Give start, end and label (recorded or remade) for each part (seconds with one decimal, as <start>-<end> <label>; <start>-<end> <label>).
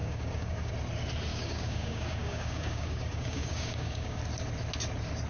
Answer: 0.0-0.7 remade; 0.7-1.3 recorded; 1.3-4.2 remade; 4.2-5.3 recorded